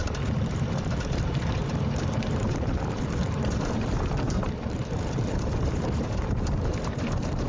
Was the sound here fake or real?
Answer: fake